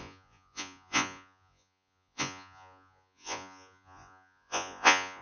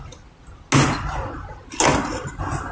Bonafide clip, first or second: second